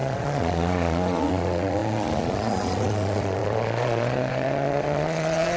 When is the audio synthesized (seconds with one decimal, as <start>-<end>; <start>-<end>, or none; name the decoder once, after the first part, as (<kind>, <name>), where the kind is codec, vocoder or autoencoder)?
0.0-5.6 (vocoder, Vocos)